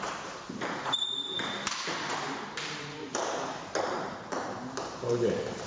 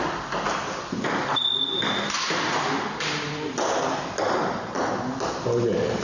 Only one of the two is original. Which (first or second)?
second